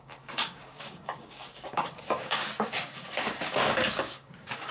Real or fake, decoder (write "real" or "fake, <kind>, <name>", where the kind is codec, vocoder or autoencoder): fake, codec, DAC